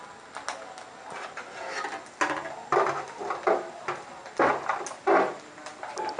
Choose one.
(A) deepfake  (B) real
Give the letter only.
B